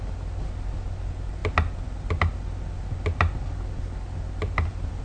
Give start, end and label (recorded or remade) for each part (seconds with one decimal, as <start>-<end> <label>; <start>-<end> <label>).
0.0-5.0 recorded